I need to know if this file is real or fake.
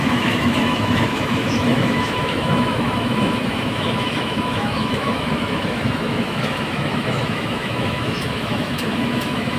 fake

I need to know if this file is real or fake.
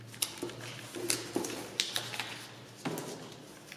real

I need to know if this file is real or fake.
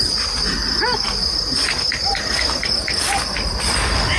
real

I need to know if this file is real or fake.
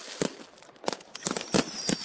real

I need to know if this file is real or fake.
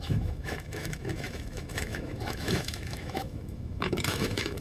fake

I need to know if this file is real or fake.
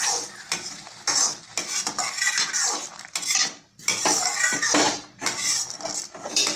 real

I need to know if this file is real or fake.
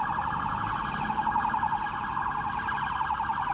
real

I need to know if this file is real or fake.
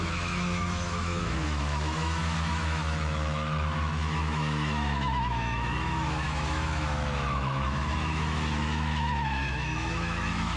fake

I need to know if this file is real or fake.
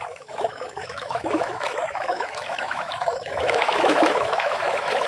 fake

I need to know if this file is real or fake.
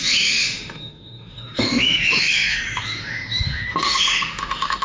fake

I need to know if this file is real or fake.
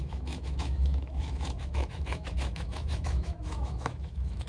fake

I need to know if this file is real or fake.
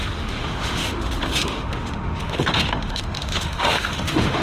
fake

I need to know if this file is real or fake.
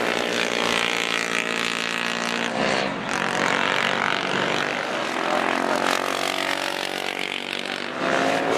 real